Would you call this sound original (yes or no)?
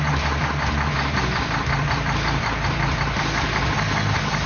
no